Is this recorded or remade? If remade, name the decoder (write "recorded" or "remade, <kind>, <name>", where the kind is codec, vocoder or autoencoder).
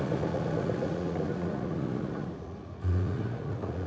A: remade, vocoder, Vocos